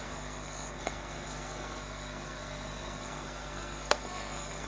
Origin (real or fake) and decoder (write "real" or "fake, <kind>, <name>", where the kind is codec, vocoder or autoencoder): fake, codec, SNAC